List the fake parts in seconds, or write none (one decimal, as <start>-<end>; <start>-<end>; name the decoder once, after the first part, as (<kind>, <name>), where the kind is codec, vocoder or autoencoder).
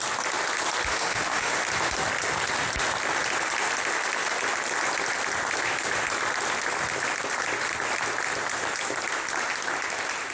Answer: 0.9-1.5 (autoencoder, DAC-VAE)